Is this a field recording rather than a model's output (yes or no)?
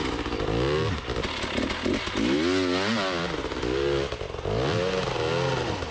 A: yes